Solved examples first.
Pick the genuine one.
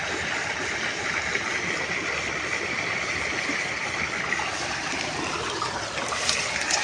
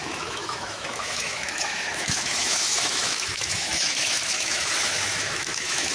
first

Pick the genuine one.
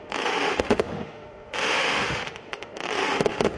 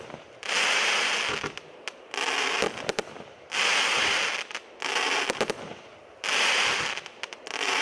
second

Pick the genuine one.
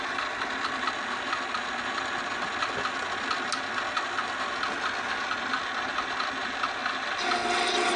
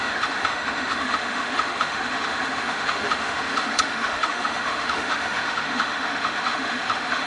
first